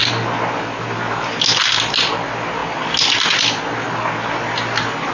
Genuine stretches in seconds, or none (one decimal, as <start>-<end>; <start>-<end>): 0.0-5.1